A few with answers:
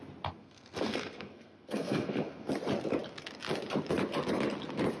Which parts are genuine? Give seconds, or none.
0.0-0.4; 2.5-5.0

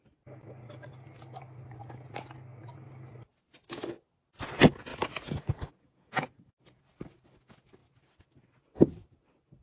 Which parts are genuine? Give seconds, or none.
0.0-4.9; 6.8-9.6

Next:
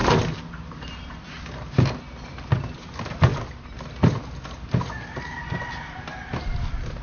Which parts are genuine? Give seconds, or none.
0.0-7.0

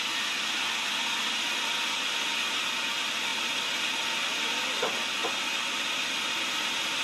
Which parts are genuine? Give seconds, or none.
0.0-1.2; 1.8-7.0

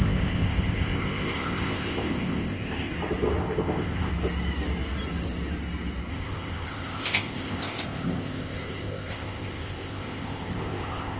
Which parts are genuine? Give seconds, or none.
2.9-3.4; 4.1-6.1

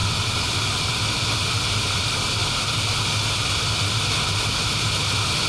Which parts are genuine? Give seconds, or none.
0.0-5.5